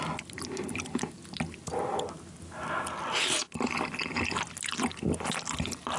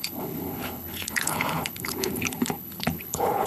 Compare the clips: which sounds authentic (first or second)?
first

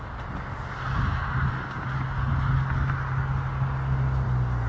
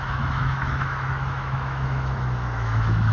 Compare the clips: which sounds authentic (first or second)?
first